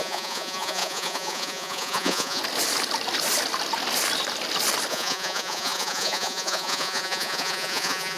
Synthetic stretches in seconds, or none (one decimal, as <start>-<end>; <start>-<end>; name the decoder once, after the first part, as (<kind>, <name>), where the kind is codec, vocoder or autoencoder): 0.0-2.4 (vocoder, Vocos); 4.9-8.2